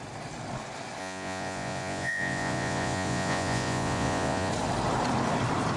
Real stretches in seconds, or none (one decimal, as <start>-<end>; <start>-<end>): 0.0-1.0; 4.5-5.8